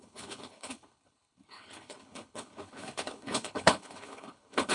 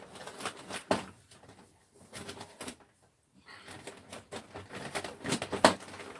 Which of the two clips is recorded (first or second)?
second